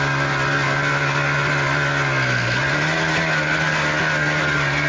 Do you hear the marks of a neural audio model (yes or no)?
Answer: no